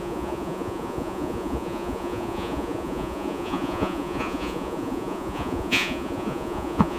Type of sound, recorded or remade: remade